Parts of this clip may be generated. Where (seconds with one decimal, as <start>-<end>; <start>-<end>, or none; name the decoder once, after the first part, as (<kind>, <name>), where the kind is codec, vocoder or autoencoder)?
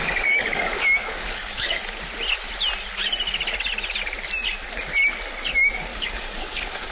0.0-1.8 (codec, DAC); 5.9-6.9